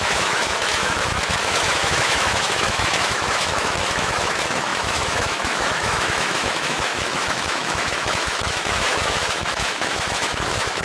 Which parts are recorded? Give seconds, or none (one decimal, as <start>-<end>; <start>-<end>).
none